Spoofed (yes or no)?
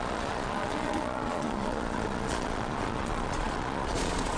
yes